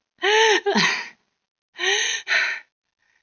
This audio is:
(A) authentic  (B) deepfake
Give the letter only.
A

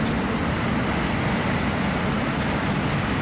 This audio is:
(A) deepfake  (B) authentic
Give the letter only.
B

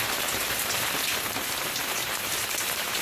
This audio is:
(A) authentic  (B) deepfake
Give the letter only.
B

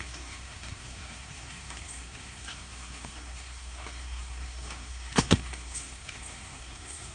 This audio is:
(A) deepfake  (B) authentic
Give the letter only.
A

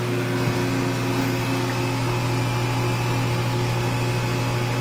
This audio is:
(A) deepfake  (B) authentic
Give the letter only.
A